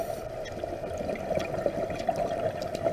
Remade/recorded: remade